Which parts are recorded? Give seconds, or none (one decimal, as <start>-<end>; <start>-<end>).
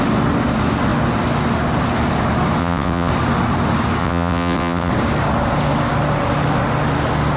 0.0-2.6; 3.1-4.0; 4.9-7.4